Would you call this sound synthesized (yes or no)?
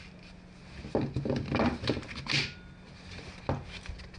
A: no